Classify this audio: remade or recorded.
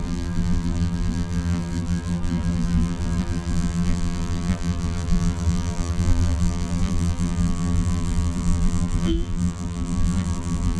remade